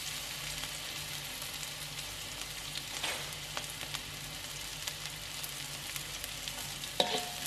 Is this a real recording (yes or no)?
yes